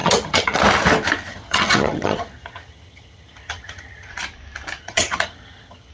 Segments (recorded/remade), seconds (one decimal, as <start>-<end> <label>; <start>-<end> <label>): 0.0-0.6 remade; 0.6-1.3 recorded; 1.3-4.1 remade; 4.1-4.8 recorded; 4.8-5.9 remade